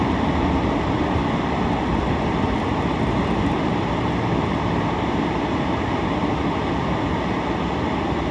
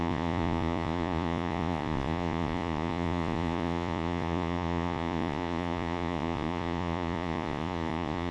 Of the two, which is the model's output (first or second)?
second